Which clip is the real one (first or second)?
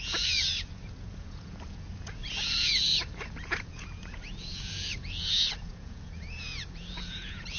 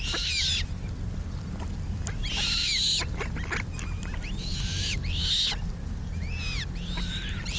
second